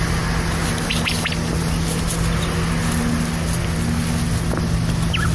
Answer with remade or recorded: recorded